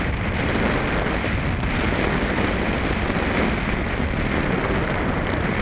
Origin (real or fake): real